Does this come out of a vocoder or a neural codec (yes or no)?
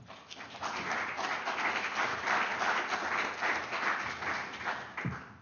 no